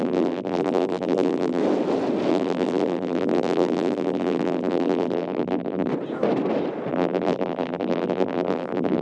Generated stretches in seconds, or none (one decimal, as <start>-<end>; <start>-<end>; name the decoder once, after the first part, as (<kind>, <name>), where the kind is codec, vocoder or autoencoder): 0.0-1.6 (vocoder, BigVGAN v2); 2.3-5.9; 6.9-9.0